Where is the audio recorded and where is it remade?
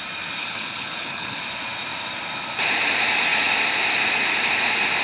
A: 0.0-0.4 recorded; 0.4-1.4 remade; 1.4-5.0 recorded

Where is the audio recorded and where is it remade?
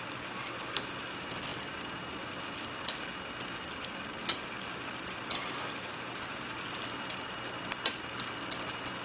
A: 0.0-9.0 recorded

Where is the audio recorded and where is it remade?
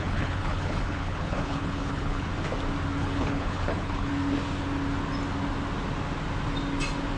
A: 0.0-2.3 remade; 2.3-3.0 recorded; 3.0-4.1 remade; 4.1-7.2 recorded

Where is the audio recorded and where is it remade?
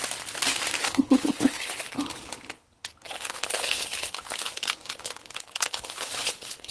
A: 0.0-0.8 recorded; 0.8-2.0 remade; 2.0-2.5 recorded; 2.5-6.7 remade